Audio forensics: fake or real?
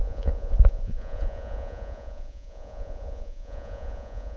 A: fake